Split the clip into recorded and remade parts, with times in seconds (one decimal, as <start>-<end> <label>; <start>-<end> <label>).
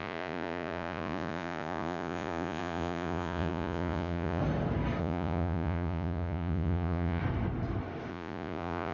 0.0-4.4 remade; 4.4-5.0 recorded; 5.0-7.2 remade; 7.2-8.1 recorded; 8.1-8.9 remade